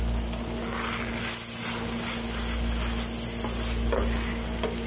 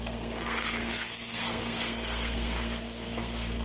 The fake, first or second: second